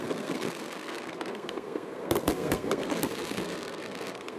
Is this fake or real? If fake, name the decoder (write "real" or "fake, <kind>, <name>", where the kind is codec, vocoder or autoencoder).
fake, codec, SNAC